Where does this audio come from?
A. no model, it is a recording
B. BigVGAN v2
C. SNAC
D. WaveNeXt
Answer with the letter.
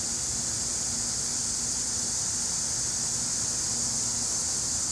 A